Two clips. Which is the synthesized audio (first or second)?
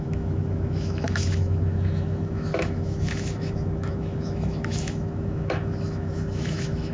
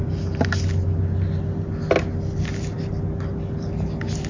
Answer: first